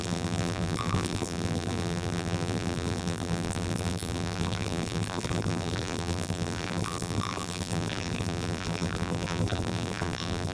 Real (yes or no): no